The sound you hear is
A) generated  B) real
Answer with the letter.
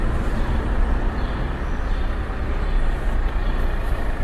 A